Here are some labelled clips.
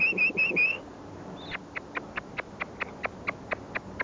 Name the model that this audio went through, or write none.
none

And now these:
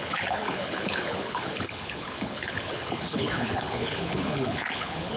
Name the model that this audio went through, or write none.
codec, HILCodec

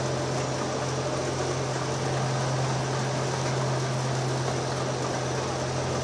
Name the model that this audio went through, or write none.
none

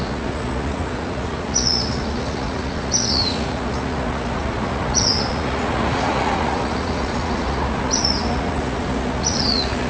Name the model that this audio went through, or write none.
vocoder, Vocos